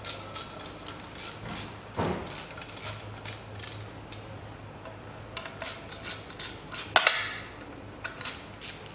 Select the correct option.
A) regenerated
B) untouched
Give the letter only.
B